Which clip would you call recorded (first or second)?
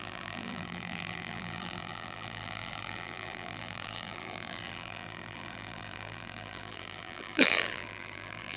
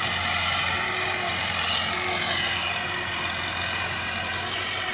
second